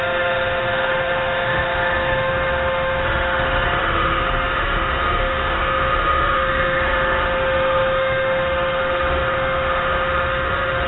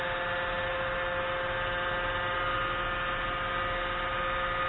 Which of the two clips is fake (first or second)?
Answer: first